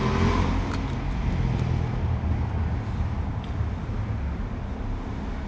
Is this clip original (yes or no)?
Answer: yes